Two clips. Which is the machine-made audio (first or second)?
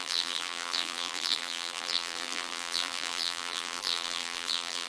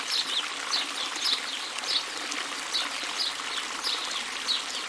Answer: first